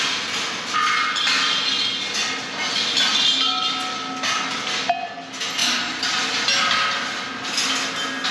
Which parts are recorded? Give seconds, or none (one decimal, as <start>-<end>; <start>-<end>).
0.0-8.3